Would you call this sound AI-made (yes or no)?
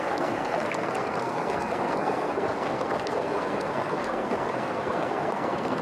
yes